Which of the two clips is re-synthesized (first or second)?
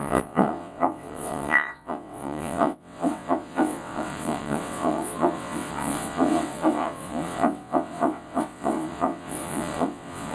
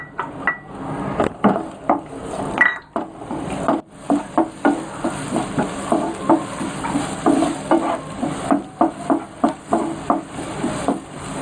first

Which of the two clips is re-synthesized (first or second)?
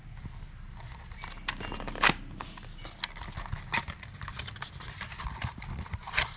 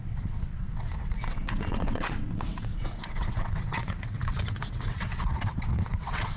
second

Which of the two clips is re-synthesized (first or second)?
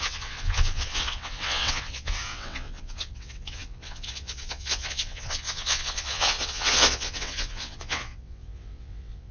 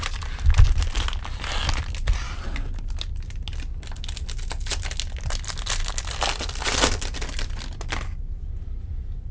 first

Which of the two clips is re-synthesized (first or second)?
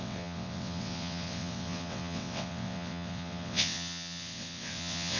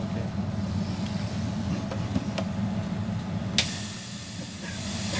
first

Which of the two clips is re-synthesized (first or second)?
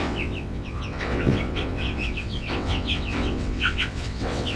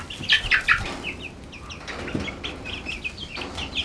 first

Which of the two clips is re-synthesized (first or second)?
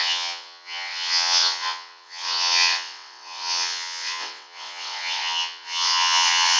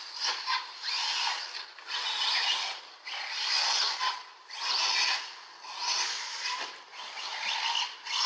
first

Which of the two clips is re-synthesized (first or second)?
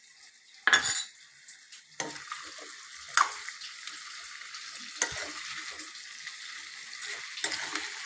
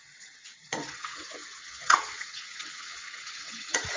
second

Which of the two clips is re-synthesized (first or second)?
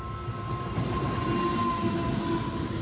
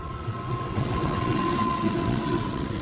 second